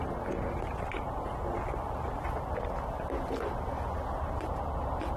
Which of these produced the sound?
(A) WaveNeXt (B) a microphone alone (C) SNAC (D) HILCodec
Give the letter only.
B